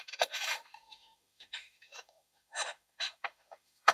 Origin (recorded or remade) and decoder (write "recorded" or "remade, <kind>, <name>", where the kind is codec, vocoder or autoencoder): remade, autoencoder, DAC-VAE